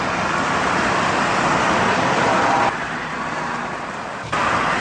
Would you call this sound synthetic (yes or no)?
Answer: no